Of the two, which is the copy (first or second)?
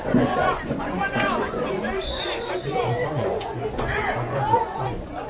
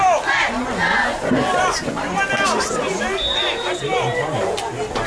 first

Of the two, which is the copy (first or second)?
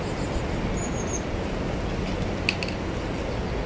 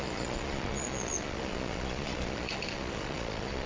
second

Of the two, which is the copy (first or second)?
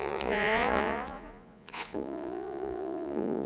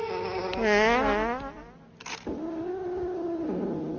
first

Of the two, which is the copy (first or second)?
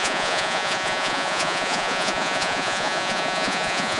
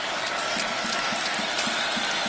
first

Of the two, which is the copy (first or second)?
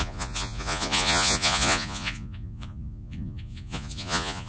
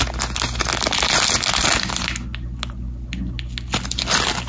first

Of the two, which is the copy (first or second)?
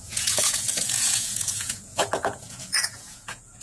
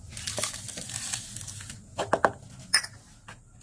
first